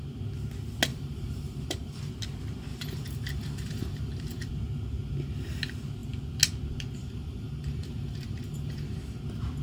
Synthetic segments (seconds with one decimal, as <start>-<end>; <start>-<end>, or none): 0.9-2.1; 2.7-4.5; 7.0-9.2